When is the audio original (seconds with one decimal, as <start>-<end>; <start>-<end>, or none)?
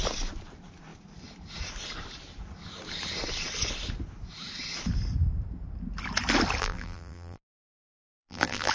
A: 0.0-6.6